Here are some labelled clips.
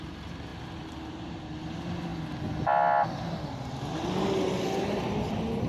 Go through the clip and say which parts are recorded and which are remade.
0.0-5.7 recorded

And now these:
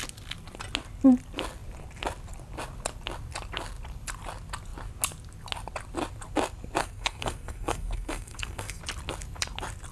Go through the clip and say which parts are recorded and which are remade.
0.0-6.8 recorded; 6.8-8.8 remade; 8.8-9.9 recorded